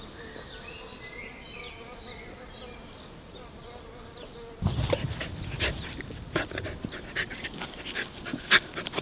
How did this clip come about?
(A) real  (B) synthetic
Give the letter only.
A